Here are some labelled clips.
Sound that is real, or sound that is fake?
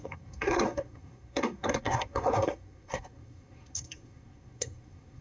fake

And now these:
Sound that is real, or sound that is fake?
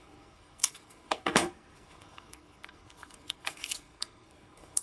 fake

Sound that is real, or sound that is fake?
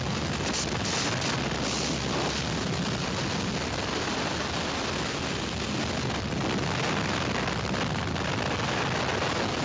real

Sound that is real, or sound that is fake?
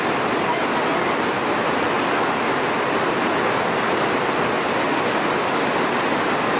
real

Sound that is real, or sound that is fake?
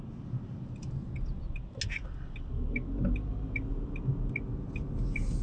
real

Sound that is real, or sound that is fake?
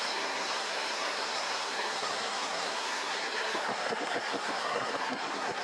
fake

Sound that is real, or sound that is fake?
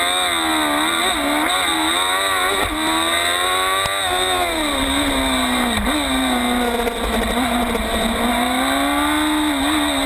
real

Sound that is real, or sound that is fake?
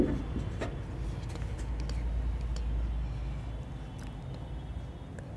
real